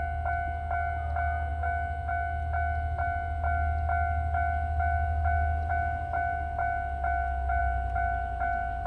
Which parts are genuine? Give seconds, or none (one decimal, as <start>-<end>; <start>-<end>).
0.0-8.9